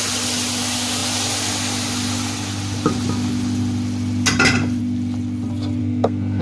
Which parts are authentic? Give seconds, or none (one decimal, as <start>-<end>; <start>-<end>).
0.0-5.8